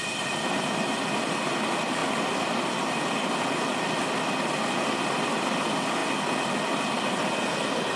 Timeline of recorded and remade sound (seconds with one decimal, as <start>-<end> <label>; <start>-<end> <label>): 0.0-8.0 recorded